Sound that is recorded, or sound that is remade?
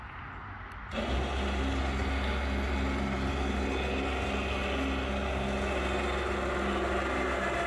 recorded